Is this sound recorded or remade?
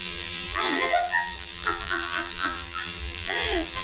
remade